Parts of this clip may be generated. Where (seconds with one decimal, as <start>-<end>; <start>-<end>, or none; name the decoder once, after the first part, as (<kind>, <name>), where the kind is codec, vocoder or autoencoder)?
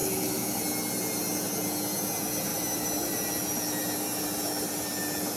0.0-0.6 (autoencoder, DAC-VAE)